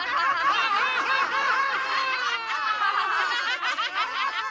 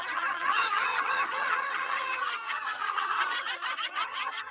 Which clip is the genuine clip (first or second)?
first